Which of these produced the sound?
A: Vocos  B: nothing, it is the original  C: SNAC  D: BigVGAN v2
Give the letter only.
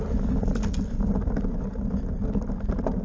B